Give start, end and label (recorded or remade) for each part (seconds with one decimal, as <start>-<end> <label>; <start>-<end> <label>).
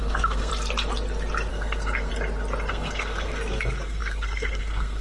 0.0-0.5 remade; 0.5-1.5 recorded; 1.5-2.1 remade; 2.1-2.7 recorded; 2.7-5.0 remade